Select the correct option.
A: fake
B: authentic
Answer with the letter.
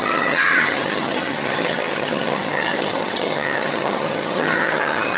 A